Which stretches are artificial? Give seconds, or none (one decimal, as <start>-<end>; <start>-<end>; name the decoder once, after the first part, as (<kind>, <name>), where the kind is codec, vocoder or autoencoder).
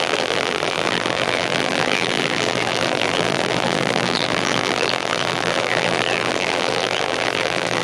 0.0-7.8 (vocoder, BigVGAN v2)